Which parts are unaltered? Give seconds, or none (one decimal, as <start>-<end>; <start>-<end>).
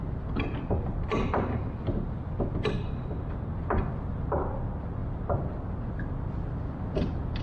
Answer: 2.9-5.0